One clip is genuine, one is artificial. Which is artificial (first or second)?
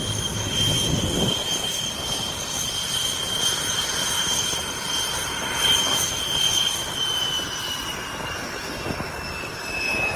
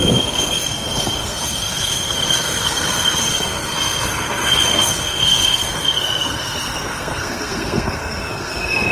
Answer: second